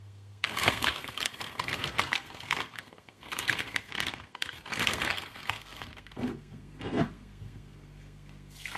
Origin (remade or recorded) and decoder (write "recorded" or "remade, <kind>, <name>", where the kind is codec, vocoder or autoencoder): remade, codec, SNAC